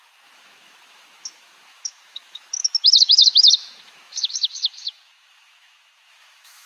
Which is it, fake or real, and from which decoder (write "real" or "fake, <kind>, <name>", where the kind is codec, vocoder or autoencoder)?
fake, autoencoder, DAC-VAE